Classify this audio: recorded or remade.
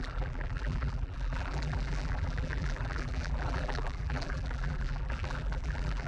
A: remade